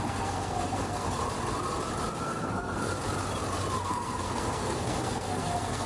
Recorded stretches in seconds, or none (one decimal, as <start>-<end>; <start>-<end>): 1.2-2.2; 2.9-3.8